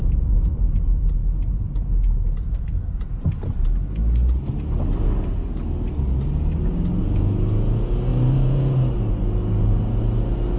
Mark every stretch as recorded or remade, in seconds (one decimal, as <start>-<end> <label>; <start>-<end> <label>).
0.0-8.1 recorded; 8.1-9.1 remade; 9.1-10.6 recorded

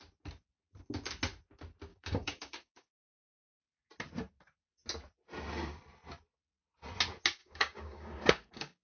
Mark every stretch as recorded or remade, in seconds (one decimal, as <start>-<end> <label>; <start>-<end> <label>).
0.0-1.9 recorded; 1.9-3.6 remade; 3.6-7.4 recorded; 7.4-8.8 remade

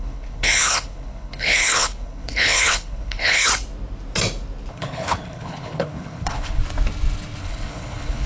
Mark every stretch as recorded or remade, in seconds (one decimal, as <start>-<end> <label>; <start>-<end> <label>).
0.0-3.5 remade; 3.5-4.7 recorded; 4.7-6.6 remade; 6.6-7.4 recorded; 7.4-8.3 remade

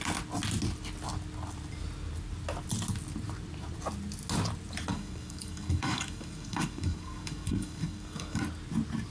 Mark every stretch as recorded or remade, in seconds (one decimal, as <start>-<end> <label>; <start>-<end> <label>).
0.0-4.9 recorded; 4.9-8.4 remade; 8.4-9.1 recorded

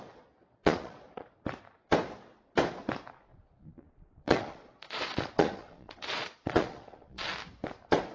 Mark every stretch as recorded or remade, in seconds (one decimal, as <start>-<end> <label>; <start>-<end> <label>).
0.0-0.4 recorded; 0.4-1.3 remade; 1.3-3.3 recorded; 3.3-7.2 remade; 7.2-8.1 recorded

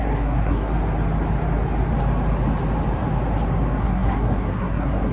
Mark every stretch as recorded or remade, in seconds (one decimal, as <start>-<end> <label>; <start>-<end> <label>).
0.0-0.7 remade; 0.7-3.8 recorded; 3.8-5.1 remade

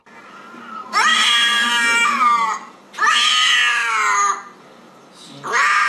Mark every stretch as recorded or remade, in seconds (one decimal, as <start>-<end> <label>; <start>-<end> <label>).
0.0-5.9 recorded

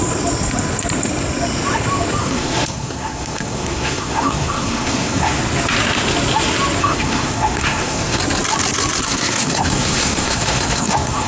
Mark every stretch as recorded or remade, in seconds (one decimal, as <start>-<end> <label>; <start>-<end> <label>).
0.0-2.2 recorded; 2.2-5.4 remade; 5.4-6.8 recorded; 6.8-8.2 remade; 8.2-9.0 recorded; 9.0-11.3 remade